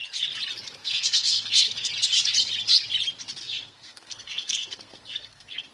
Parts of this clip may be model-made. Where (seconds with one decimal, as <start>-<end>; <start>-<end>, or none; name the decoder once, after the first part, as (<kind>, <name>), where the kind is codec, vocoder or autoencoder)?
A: 0.8-1.9 (codec, SNAC); 3.4-5.7

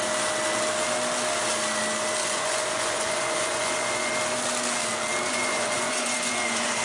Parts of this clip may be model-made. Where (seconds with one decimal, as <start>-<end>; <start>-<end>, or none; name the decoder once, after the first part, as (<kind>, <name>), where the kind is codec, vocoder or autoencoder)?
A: 2.2-4.1 (vocoder, Vocos); 5.3-6.8

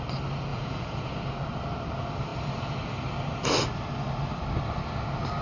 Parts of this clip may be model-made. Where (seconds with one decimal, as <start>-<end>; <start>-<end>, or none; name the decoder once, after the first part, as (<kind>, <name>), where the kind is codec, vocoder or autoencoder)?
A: 0.5-1.1 (vocoder, Vocos)

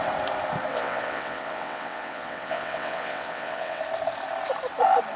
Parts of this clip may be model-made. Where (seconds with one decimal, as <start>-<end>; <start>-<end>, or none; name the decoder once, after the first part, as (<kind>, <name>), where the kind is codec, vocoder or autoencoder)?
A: 0.7-3.8 (vocoder, WaveNeXt)

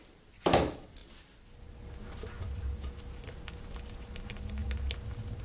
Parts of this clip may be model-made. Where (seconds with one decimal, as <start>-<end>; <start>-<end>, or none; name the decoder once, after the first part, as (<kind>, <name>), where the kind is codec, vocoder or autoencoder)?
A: none

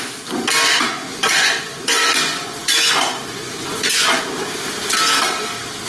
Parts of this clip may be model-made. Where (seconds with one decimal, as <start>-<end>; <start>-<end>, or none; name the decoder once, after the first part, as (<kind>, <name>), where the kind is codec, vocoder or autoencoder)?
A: 0.7-4.2 (vocoder, Vocos)

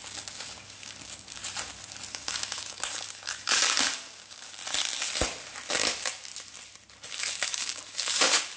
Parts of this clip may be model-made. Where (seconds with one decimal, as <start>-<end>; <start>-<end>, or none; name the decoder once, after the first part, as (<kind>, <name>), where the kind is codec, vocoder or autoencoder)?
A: 0.0-1.4 (codec, DAC); 2.1-4.6; 5.7-6.3; 7.1-8.6

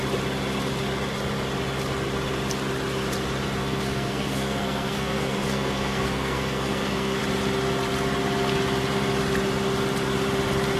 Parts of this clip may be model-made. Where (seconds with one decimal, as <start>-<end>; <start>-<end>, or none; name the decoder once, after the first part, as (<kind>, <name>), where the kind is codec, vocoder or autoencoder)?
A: 3.6-7.2 (codec, SNAC)